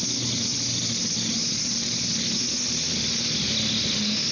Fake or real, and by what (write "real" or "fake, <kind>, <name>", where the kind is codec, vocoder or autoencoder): real